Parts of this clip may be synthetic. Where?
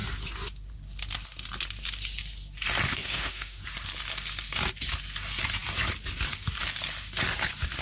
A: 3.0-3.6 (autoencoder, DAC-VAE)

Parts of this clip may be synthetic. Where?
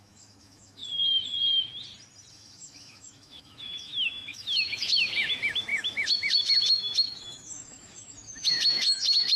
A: 0.0-0.8 (autoencoder, DAC-VAE); 2.3-9.4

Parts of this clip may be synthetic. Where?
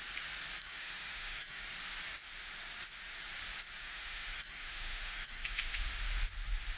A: 0.6-1.6 (autoencoder, DAC-VAE); 3.8-5.9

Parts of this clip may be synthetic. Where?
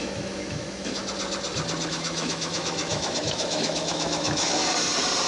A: 0.0-1.0 (autoencoder, DAC-VAE); 1.9-4.6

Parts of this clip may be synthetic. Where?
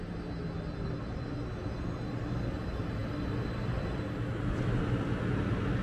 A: none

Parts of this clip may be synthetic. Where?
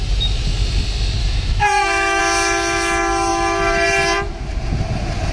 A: 1.2-2.2 (autoencoder, DAC-VAE)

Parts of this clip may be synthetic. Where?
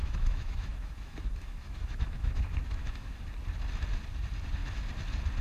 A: 0.0-3.2 (autoencoder, DAC-VAE)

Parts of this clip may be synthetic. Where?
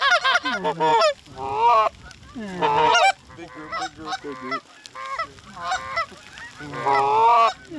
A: none